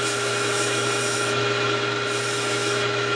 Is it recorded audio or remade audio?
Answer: remade